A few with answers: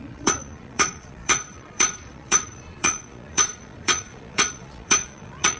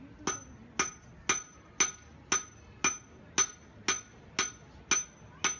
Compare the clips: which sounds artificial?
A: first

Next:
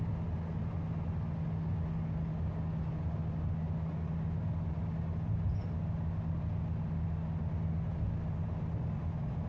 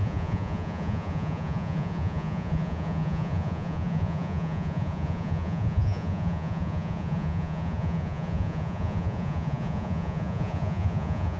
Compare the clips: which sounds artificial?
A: second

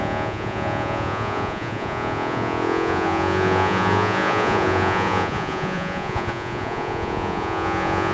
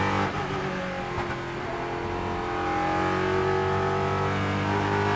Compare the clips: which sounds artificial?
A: first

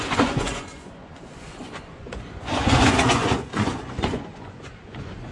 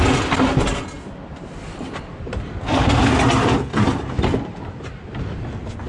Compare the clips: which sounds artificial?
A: first